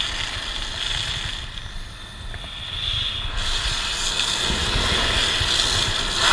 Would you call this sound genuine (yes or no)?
yes